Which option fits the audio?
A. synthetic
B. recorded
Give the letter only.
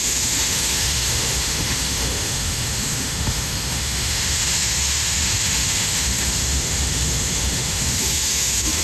A